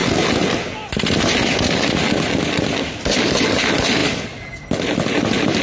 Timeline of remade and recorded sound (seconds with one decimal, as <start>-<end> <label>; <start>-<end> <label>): 0.0-5.6 recorded